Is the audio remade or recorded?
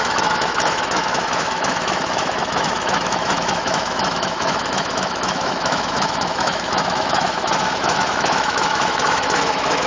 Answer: remade